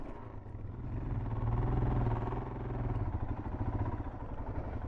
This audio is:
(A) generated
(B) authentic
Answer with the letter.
B